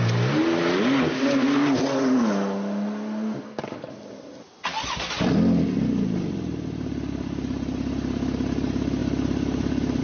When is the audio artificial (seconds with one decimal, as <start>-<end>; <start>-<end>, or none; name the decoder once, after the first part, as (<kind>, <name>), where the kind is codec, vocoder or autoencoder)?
none